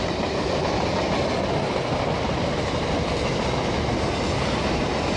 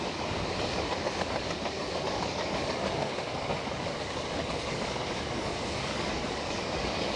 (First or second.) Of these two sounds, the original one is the first